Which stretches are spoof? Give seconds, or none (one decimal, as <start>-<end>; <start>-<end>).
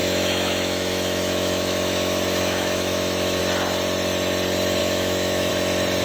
0.0-3.4; 4.8-5.5